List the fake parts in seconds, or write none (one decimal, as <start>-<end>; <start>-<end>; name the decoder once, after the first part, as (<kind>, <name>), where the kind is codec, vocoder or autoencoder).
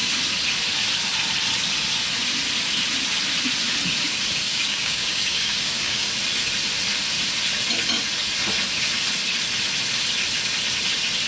4.5-6.1 (codec, DAC)